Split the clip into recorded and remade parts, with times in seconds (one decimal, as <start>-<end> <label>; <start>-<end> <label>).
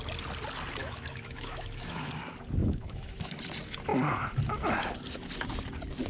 0.0-0.8 recorded; 0.8-2.1 remade; 2.1-2.6 recorded; 2.6-3.3 remade; 3.3-6.1 recorded